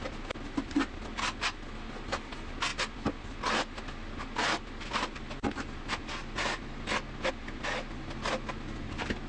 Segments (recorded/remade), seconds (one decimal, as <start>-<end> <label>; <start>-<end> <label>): 0.0-9.3 recorded